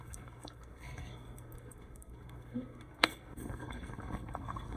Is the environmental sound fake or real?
fake